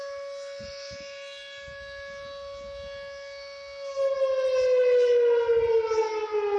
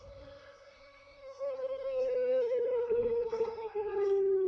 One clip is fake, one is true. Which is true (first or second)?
first